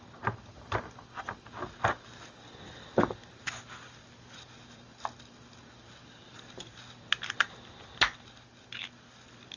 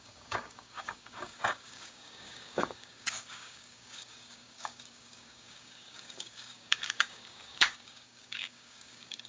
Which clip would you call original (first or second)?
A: first